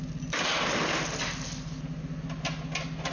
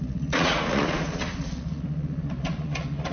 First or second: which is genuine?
first